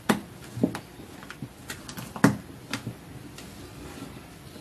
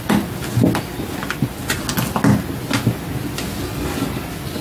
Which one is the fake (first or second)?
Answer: first